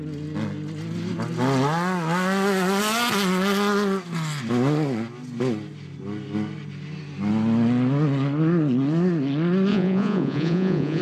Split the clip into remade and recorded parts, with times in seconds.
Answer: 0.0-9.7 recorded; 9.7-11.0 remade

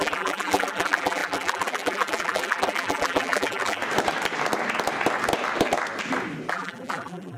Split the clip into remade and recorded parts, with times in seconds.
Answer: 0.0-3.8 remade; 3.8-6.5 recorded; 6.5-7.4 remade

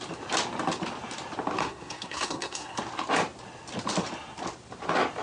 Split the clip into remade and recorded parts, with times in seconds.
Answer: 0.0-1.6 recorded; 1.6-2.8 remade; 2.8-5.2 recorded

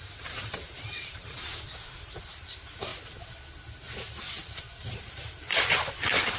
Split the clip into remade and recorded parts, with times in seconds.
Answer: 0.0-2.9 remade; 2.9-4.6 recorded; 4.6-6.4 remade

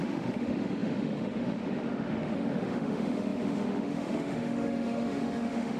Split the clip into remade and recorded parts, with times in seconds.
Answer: 0.0-5.8 remade

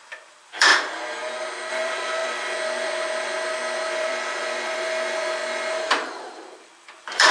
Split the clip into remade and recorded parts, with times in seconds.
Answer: 0.0-0.7 remade; 0.7-1.7 recorded; 1.7-5.4 remade; 5.4-6.3 recorded; 6.3-7.3 remade